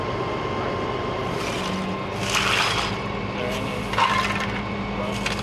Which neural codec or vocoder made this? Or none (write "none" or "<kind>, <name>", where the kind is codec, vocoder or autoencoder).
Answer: none